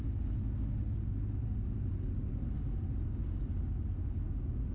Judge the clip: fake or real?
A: real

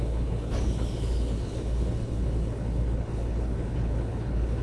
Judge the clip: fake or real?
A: fake